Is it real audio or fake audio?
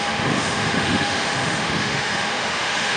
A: fake